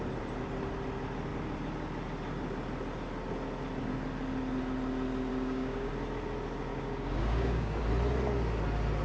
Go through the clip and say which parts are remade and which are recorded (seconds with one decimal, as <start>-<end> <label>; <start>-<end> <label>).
0.0-5.3 recorded; 5.3-5.9 remade; 5.9-6.7 recorded; 6.7-7.8 remade; 7.8-9.0 recorded